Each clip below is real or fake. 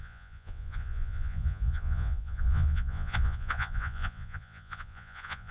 fake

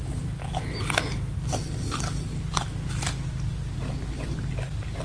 real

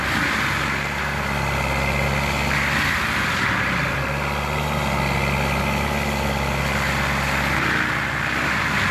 real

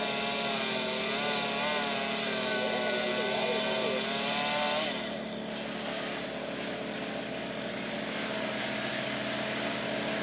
real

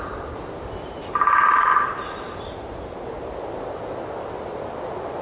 real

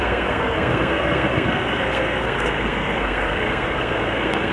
fake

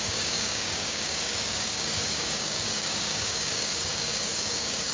fake